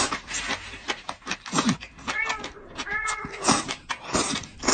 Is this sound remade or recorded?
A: recorded